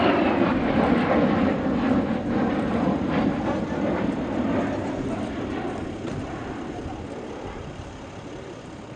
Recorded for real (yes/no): yes